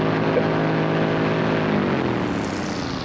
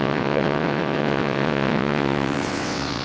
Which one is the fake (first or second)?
second